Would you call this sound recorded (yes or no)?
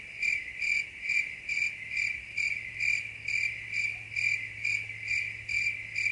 yes